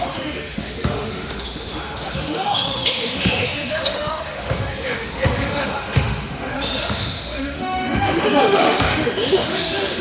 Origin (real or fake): fake